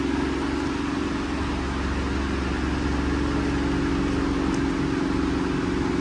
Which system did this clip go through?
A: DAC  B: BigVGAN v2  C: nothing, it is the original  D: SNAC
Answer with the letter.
C